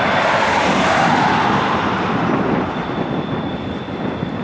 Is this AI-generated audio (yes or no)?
no